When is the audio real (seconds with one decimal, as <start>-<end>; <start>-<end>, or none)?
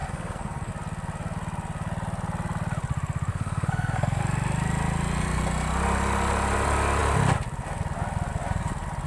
0.7-3.3; 4.2-9.1